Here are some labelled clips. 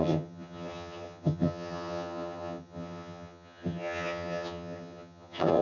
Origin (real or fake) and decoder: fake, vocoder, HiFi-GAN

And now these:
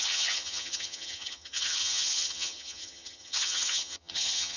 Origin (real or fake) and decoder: fake, vocoder, HiFi-GAN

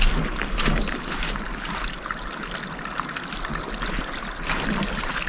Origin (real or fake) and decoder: real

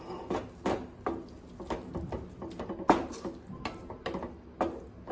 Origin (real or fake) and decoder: real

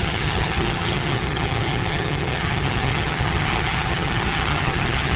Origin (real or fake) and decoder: fake, vocoder, HiFi-GAN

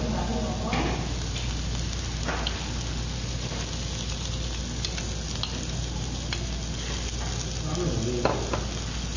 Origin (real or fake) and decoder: real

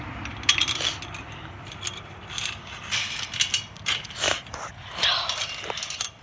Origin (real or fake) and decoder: real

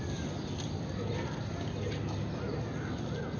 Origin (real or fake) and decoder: real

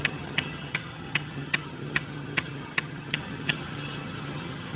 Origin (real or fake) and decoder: fake, vocoder, HiFi-GAN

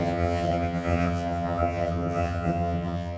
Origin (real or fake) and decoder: fake, vocoder, HiFi-GAN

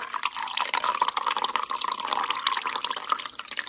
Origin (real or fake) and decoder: real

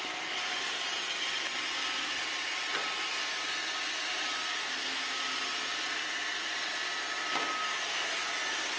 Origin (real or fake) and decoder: real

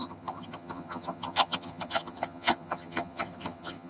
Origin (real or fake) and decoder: fake, vocoder, HiFi-GAN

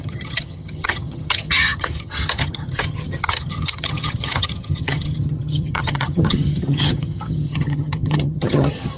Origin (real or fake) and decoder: fake, vocoder, HiFi-GAN